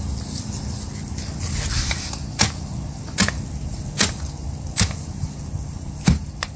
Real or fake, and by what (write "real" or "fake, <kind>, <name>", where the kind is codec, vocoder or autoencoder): real